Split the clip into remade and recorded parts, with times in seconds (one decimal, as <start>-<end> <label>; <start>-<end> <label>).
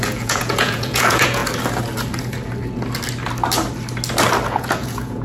0.0-1.4 remade; 1.4-4.5 recorded; 4.5-5.2 remade